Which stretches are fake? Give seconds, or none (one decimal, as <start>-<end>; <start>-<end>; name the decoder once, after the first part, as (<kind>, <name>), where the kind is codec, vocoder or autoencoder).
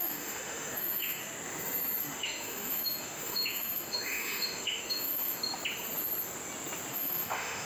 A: 0.0-1.2 (autoencoder, DAC-VAE); 2.0-5.4; 6.9-7.7